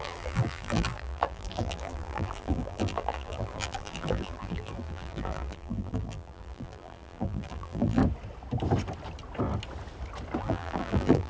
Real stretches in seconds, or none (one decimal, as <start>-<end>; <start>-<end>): 8.0-10.4